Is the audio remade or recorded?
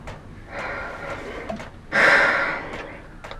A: recorded